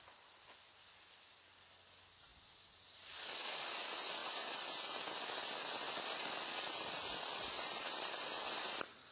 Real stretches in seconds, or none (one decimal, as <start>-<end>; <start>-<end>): 0.0-9.1